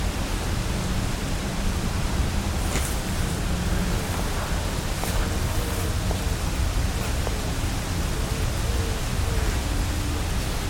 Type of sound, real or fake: real